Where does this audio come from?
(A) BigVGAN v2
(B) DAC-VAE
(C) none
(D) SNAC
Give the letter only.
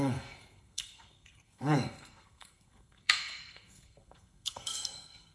D